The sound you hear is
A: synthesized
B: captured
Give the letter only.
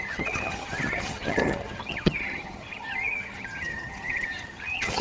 A